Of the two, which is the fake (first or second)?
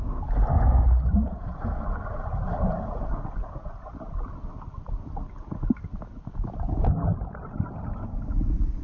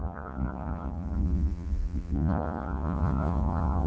second